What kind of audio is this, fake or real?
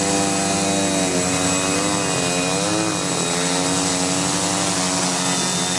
real